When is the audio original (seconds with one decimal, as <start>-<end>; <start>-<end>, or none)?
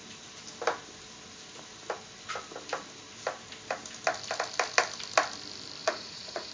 0.0-5.8